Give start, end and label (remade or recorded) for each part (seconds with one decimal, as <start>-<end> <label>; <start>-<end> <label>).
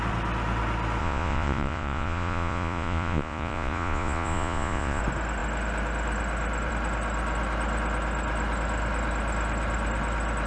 0.0-1.0 recorded; 1.0-5.0 remade; 5.0-10.5 recorded